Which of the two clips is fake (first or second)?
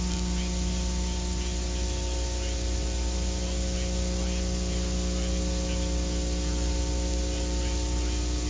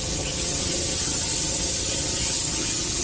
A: second